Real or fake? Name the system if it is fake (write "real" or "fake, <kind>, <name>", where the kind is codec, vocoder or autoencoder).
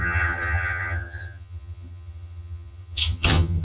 fake, vocoder, HiFi-GAN